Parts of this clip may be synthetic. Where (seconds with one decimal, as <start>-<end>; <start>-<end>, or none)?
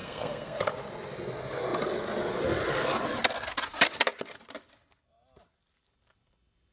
0.0-0.6